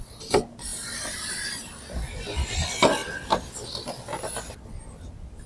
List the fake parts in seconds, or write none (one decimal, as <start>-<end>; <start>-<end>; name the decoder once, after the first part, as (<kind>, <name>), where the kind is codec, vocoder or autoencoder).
none

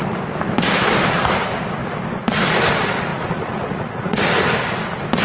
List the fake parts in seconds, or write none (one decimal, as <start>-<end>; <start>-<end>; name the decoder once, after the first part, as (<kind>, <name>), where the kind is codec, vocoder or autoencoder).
3.1-4.2 (vocoder, Vocos)

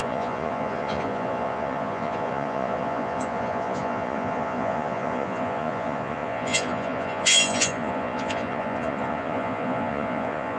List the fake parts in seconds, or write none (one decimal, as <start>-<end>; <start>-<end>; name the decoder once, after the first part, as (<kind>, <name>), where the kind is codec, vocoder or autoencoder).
0.0-10.6 (vocoder, Vocos)

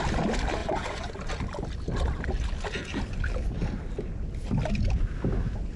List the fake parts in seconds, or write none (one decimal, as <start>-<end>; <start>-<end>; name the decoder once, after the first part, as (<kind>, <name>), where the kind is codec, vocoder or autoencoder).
0.6-1.1 (vocoder, Vocos)